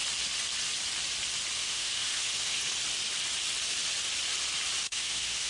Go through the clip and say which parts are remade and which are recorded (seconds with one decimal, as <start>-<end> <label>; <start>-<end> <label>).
0.0-1.6 recorded; 1.6-2.6 remade; 2.6-4.8 recorded; 4.8-5.5 remade